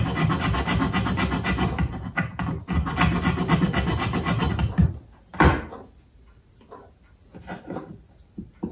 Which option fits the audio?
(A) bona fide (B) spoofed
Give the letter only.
A